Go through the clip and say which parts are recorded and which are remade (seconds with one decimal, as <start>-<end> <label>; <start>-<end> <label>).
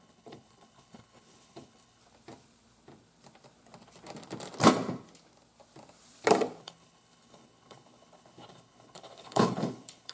0.0-2.0 remade; 2.0-6.6 recorded; 6.6-10.1 remade